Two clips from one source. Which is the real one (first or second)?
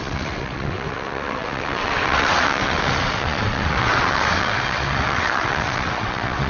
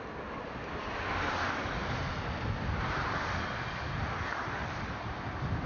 second